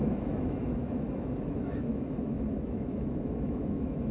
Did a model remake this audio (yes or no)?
yes